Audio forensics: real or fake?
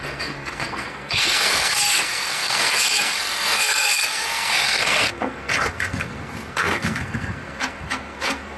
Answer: fake